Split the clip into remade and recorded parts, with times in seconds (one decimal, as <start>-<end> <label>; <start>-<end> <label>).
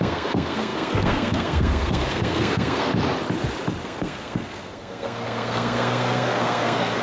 0.0-2.9 remade; 2.9-3.8 recorded; 3.8-7.0 remade